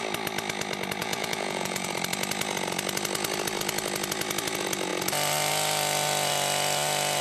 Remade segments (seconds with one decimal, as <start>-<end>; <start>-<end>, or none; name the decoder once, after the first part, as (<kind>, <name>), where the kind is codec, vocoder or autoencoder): 1.0-1.9 (vocoder, Vocos)